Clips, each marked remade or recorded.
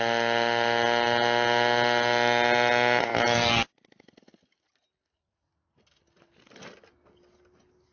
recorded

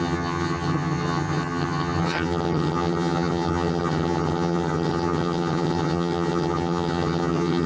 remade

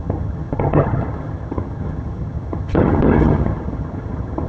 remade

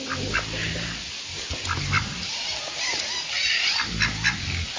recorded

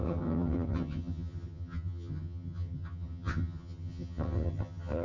remade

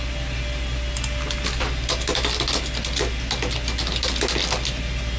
recorded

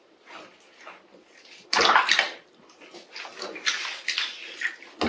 recorded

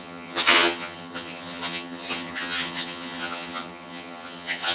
remade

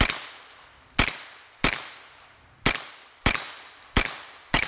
recorded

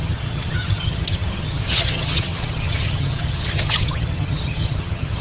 remade